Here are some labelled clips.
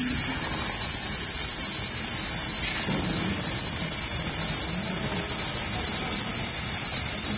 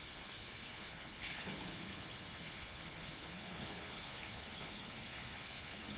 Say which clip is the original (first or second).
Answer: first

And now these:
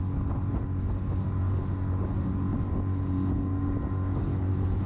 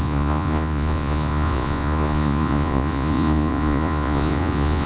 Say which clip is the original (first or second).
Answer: first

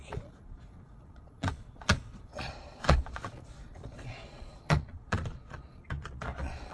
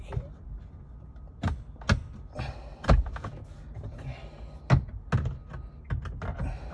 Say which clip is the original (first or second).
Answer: second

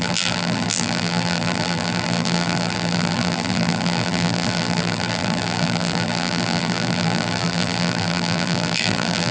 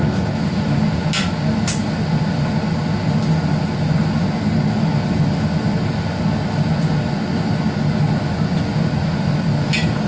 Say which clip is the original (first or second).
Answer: second